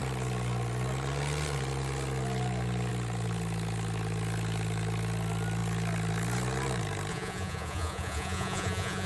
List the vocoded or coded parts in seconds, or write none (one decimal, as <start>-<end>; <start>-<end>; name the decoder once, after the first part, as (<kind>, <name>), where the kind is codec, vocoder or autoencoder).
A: 7.1-9.1 (vocoder, Vocos)